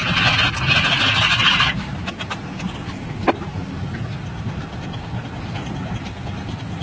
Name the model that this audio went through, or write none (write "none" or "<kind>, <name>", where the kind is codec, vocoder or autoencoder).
none